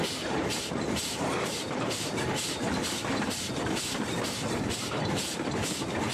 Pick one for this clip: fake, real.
fake